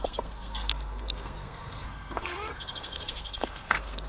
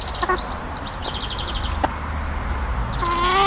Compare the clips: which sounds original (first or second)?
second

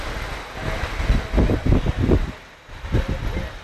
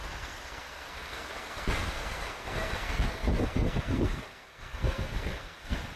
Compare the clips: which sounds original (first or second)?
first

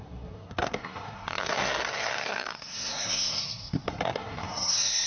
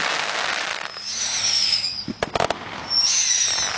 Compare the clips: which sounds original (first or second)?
second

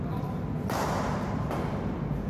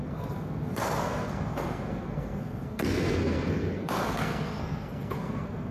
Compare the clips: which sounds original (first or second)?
first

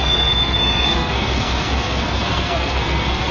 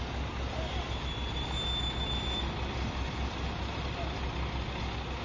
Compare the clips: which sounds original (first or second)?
second